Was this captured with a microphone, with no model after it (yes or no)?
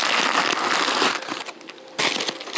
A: yes